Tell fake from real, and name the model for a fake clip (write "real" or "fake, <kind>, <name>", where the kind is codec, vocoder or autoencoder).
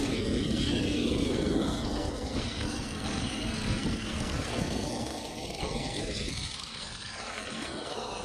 fake, codec, SNAC